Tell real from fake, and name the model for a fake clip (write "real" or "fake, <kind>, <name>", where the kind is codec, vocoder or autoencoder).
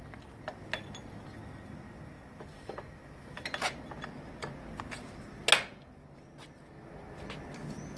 real